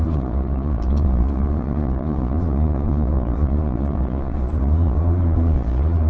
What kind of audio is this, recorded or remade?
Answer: remade